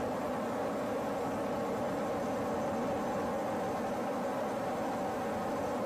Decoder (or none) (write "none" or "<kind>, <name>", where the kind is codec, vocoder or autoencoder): none